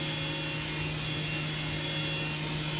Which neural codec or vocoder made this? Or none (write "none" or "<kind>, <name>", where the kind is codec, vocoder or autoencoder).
none